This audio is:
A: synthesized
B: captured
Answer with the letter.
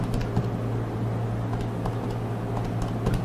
B